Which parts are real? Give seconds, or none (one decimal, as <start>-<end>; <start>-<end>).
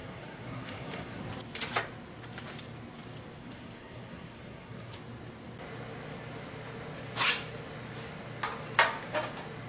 1.2-3.4; 5.0-9.7